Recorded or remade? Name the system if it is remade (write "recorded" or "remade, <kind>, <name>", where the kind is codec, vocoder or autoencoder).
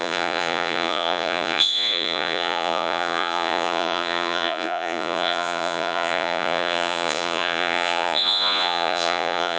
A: remade, vocoder, Vocos